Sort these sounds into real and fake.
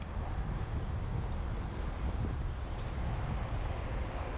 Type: real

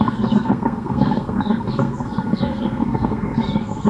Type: fake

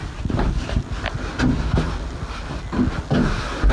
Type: real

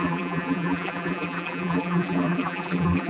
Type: fake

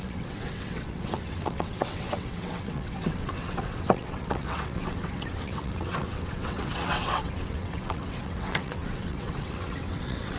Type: fake